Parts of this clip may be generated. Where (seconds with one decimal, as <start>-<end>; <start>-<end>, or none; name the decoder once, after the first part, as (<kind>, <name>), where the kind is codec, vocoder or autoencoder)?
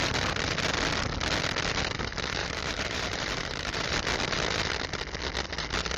2.4-3.9 (vocoder, BigVGAN v2)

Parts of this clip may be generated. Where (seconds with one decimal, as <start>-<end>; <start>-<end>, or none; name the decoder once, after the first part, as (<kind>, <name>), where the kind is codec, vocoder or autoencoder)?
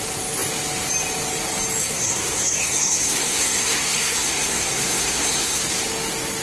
1.8-5.6 (codec, SNAC)